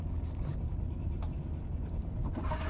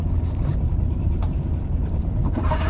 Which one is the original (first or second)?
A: first